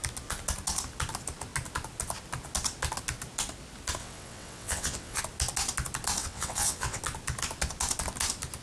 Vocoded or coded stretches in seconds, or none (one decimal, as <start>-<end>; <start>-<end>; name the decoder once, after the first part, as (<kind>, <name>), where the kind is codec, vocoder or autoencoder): 4.0-5.2 (vocoder, WaveNeXt); 6.2-7.0